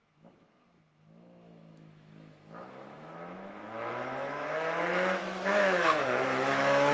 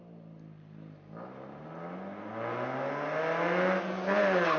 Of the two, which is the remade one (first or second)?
first